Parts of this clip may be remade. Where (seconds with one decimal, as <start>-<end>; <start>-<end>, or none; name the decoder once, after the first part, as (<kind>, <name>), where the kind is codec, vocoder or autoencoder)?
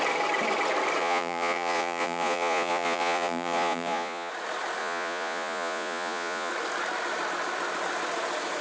1.0-4.3 (vocoder, Vocos); 4.8-6.5